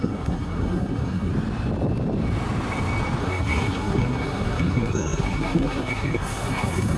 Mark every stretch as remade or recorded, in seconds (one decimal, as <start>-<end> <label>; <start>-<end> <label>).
0.0-1.3 remade; 1.3-3.2 recorded; 3.2-7.0 remade